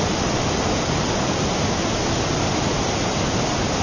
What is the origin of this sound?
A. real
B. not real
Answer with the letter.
A